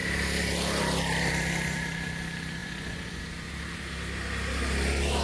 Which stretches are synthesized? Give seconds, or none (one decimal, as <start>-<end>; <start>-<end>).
2.6-3.2